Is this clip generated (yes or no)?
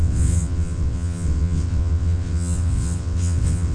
yes